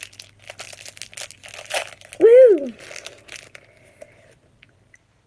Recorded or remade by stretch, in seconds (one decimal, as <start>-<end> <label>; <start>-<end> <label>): 0.0-5.3 recorded

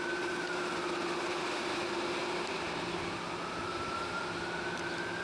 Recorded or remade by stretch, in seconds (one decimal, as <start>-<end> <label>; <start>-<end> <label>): 0.0-5.2 recorded

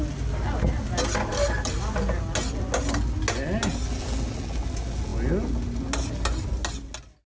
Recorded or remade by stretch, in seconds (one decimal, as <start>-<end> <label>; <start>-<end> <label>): 0.0-7.3 recorded

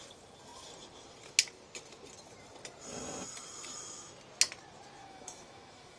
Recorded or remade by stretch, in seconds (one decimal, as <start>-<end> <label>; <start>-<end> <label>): 0.0-5.0 recorded; 5.0-6.0 remade

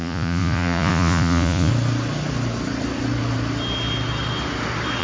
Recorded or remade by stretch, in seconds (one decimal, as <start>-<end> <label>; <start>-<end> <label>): 0.0-1.7 remade; 1.7-5.0 recorded

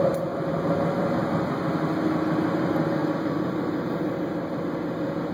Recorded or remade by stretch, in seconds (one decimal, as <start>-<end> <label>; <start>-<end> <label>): 0.0-5.3 recorded